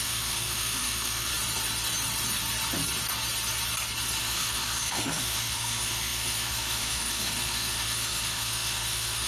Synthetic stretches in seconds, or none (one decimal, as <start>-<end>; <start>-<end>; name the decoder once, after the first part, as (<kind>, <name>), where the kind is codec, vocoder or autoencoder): 0.0-1.3 (autoencoder, DAC-VAE); 4.2-9.3